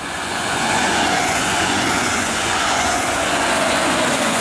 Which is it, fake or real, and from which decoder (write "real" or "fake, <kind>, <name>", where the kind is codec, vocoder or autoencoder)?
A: fake, vocoder, Vocos